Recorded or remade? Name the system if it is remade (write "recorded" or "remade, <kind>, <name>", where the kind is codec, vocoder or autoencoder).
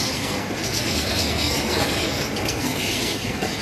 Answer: remade, codec, SNAC